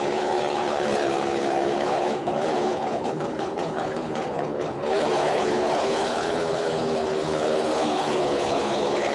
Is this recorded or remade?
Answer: remade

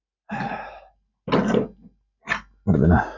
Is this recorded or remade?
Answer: recorded